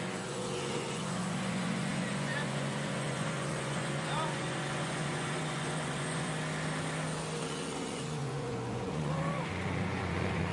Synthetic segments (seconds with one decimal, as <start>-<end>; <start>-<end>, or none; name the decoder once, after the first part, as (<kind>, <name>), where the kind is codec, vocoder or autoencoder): 0.0-6.3 (vocoder, Vocos); 7.4-10.5